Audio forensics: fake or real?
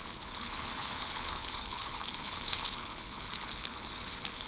fake